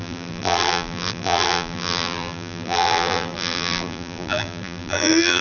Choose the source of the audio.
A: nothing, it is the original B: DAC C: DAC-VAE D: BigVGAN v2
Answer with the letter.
D